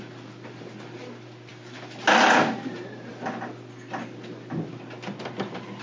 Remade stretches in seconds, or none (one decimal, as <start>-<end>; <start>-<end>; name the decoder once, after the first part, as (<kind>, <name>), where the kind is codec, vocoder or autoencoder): none